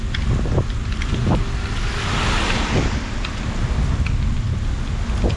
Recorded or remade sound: recorded